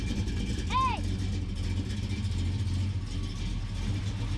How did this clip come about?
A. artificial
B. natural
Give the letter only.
B